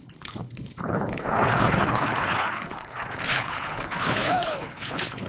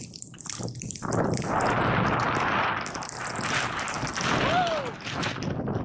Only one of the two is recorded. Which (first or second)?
second